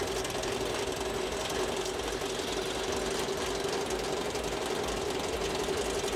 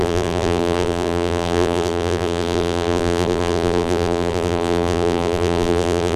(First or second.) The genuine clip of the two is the first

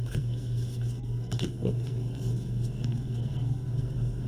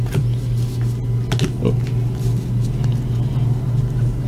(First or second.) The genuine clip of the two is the second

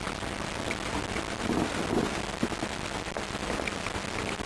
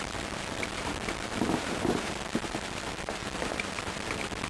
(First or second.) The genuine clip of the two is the first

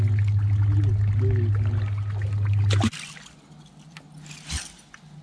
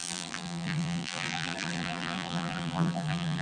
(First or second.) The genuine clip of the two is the first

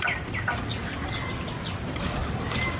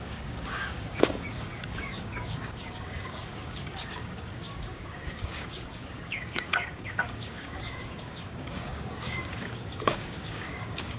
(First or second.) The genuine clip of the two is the first